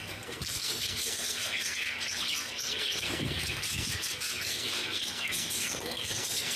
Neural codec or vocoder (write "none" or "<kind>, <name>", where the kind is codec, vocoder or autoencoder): codec, SNAC